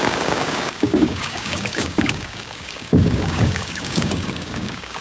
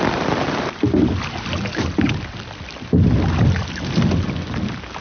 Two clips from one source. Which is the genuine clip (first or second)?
second